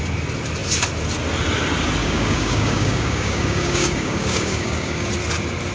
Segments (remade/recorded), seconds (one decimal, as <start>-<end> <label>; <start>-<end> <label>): 0.0-2.0 recorded; 2.0-5.1 remade; 5.1-5.7 recorded